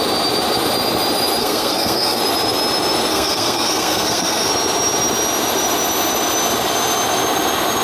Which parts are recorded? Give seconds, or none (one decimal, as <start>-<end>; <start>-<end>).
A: 0.0-1.4; 2.2-3.1; 4.5-7.8